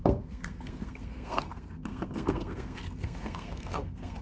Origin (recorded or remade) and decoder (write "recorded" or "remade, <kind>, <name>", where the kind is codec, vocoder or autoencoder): remade, codec, SNAC